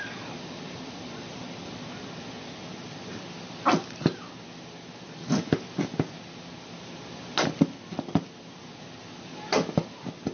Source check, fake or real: real